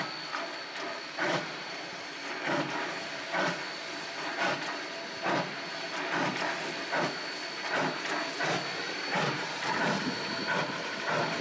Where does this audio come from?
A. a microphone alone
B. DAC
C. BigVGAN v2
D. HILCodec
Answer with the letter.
C